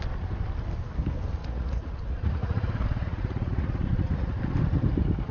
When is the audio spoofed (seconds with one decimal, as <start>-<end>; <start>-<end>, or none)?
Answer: 1.4-4.4